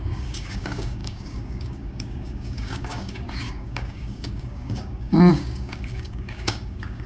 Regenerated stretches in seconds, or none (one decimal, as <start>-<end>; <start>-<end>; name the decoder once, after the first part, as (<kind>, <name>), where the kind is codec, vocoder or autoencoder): 0.0-7.1 (codec, DAC)